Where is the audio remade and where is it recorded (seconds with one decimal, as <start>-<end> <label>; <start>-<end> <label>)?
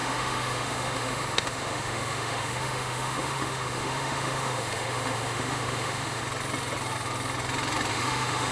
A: 0.0-6.2 remade; 6.2-7.9 recorded; 7.9-8.5 remade